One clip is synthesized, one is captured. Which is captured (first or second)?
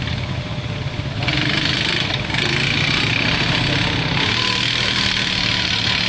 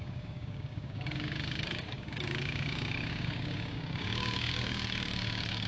first